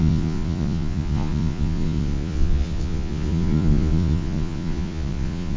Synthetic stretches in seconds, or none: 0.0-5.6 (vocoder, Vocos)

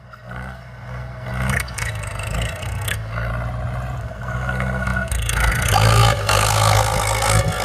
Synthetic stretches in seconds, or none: 0.0-3.3 (codec, SNAC); 4.0-7.6

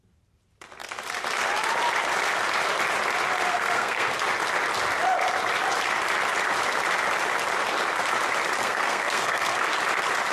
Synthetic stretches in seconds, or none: 3.5-4.1 (codec, SNAC); 8.6-9.7

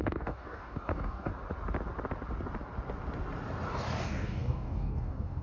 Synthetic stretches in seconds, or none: 0.0-1.3 (codec, DAC); 3.7-5.4

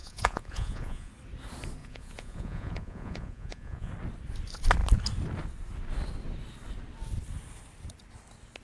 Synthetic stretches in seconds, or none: 0.0-1.1 (vocoder, Vocos); 1.8-3.9

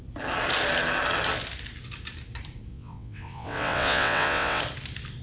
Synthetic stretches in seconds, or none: 2.7-4.6 (vocoder, WaveNeXt)

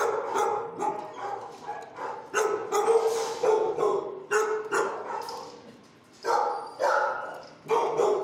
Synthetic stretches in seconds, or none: none